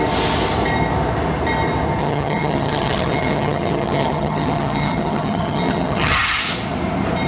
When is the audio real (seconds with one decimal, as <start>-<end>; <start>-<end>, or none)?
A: 0.0-2.0; 6.4-7.3